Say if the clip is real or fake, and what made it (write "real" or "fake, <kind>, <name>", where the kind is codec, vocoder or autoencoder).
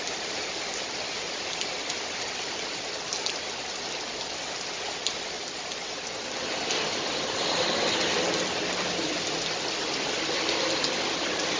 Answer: real